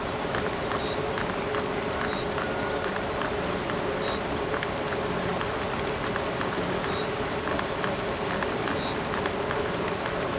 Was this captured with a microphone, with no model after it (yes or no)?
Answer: yes